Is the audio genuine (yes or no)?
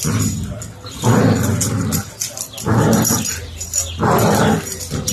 yes